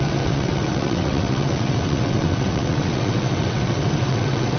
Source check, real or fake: fake